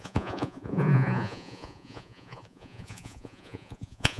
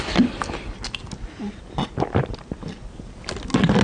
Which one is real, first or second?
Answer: second